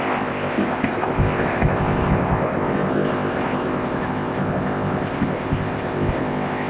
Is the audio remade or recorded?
remade